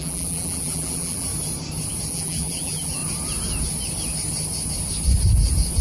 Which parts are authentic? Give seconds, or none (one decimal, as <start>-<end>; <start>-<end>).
1.3-2.1; 3.0-5.8